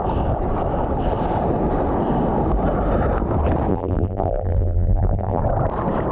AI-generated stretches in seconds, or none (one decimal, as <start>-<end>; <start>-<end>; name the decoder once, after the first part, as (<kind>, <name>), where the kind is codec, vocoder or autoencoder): 3.7-5.4 (vocoder, BigVGAN v2)